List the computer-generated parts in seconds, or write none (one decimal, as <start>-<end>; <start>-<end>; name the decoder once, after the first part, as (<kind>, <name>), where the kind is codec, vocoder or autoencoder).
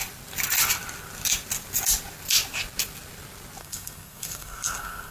3.6-5.1 (codec, SNAC)